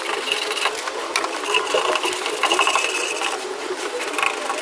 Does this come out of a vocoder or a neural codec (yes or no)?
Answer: no